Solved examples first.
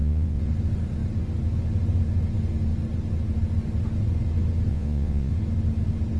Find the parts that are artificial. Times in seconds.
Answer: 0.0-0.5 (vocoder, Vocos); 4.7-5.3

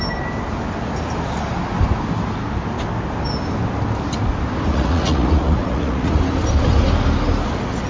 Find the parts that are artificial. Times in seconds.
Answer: 4.7-6.2 (vocoder, Vocos)

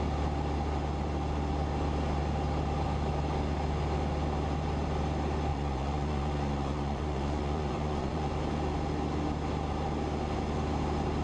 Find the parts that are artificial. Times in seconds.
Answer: 5.5-8.3 (vocoder, Vocos)

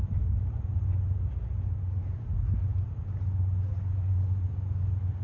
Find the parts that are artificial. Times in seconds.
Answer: none

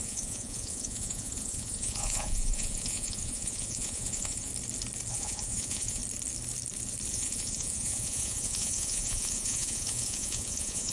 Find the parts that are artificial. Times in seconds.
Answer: 0.0-4.5 (vocoder, Vocos); 5.1-6.0; 7.1-10.9